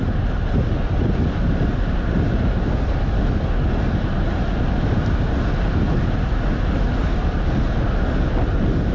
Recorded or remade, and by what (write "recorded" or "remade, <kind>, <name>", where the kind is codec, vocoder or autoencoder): recorded